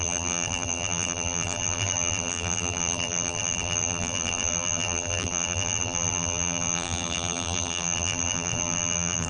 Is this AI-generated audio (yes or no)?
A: yes